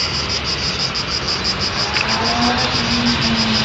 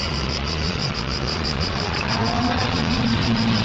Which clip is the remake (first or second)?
second